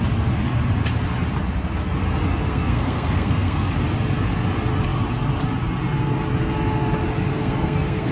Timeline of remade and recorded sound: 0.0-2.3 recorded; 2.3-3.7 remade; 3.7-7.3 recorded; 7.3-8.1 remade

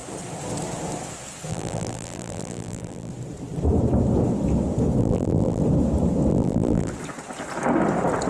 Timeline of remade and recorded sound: 0.0-1.5 recorded; 1.5-3.1 remade; 3.1-5.0 recorded; 5.0-5.6 remade; 5.6-6.3 recorded; 6.3-6.9 remade; 6.9-8.3 recorded